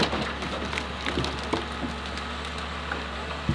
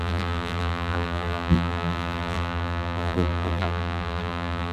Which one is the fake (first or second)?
second